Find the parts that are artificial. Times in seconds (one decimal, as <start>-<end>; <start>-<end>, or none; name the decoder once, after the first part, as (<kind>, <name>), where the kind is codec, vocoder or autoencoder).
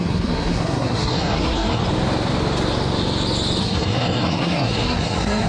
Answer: 0.0-1.8 (codec, SNAC); 3.6-5.5